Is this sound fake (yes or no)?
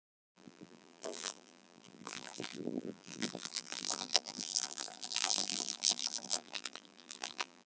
yes